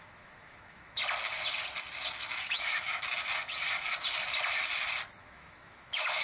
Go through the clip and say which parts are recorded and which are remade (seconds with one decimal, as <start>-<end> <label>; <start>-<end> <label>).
0.0-1.0 remade; 1.0-2.2 recorded; 2.2-3.1 remade; 3.1-5.2 recorded; 5.2-6.2 remade